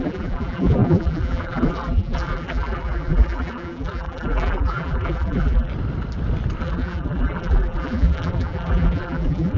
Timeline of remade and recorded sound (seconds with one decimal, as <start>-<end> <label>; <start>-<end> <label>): 0.0-5.7 remade; 5.7-6.6 recorded; 6.6-9.6 remade